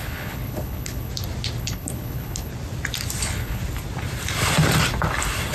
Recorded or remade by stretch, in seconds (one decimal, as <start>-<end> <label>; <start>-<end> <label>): 0.0-1.1 remade; 1.1-1.6 recorded; 1.6-2.5 remade; 2.5-3.2 recorded; 3.2-3.6 remade; 3.6-5.5 recorded